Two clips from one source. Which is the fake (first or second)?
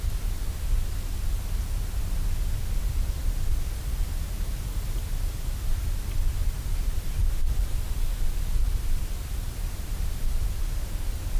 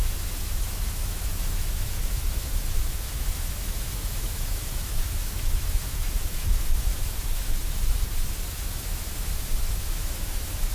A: second